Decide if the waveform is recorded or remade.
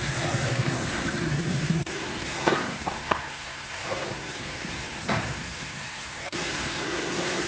remade